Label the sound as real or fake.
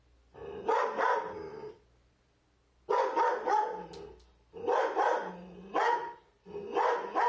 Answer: real